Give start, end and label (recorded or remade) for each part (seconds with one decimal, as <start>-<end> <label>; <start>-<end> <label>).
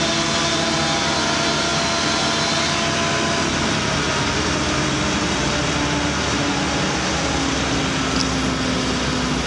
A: 0.0-9.5 recorded